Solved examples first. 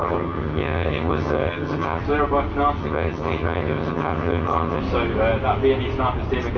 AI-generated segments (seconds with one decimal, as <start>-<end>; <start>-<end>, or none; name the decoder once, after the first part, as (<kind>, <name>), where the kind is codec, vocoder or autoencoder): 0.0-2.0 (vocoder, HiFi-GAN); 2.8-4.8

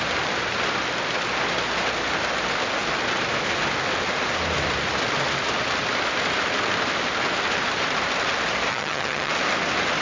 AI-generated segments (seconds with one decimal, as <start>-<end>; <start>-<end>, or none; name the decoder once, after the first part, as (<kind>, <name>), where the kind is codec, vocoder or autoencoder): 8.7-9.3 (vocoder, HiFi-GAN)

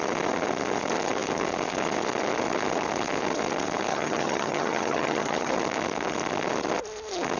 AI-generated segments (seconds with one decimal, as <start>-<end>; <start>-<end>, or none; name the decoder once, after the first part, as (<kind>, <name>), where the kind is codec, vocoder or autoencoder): 3.9-5.5 (vocoder, HiFi-GAN)

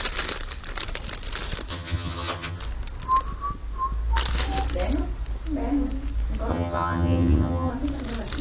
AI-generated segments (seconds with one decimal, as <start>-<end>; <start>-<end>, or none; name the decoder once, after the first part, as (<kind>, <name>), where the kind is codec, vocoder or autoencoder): 1.7-2.6 (vocoder, HiFi-GAN); 6.5-7.7

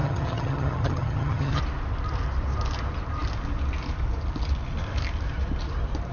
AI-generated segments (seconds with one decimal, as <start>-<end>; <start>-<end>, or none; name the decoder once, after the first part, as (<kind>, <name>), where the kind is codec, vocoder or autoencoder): 0.0-1.6 (vocoder, HiFi-GAN)

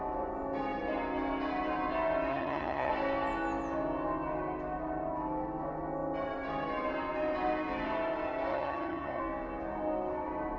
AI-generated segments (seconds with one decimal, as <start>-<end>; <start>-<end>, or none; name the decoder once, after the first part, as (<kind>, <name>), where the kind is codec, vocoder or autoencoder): 2.3-2.9 (vocoder, HiFi-GAN); 8.5-9.2